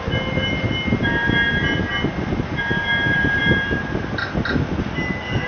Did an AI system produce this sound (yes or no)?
no